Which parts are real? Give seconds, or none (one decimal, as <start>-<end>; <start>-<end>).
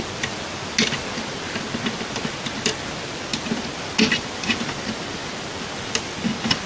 0.0-6.7